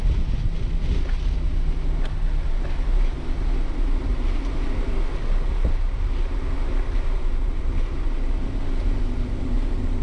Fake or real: real